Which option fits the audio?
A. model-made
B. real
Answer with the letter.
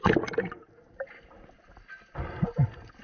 B